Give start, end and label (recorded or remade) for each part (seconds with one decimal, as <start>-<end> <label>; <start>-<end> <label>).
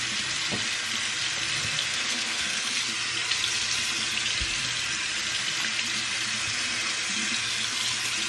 0.0-1.9 recorded; 1.9-2.8 remade; 2.8-8.3 recorded